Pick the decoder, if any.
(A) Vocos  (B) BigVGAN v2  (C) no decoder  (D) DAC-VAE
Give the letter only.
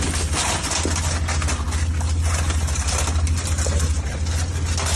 C